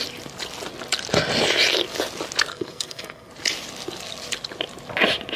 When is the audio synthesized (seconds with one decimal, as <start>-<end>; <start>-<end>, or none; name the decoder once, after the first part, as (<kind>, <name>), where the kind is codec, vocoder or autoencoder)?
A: 2.5-3.3 (codec, SNAC)